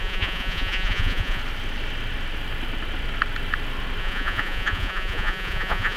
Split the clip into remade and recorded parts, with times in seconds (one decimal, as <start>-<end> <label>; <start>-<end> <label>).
0.0-1.4 remade; 1.4-4.0 recorded; 4.0-6.0 remade